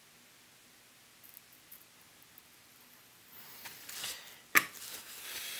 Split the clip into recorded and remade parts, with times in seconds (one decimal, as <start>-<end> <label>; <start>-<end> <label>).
0.0-5.6 recorded